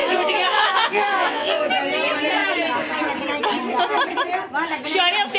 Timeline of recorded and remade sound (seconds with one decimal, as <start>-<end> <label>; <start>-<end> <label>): 0.0-1.7 remade; 1.7-5.4 recorded